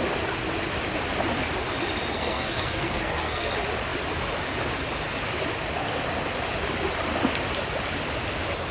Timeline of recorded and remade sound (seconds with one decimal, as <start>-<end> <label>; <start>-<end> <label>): 0.0-2.1 recorded; 2.1-3.5 remade; 3.5-8.7 recorded